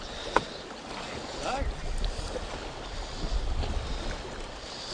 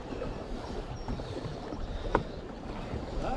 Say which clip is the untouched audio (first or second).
first